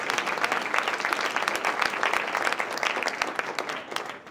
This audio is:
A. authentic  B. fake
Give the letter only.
A